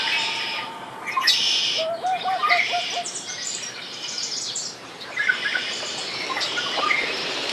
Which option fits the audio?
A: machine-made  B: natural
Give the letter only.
A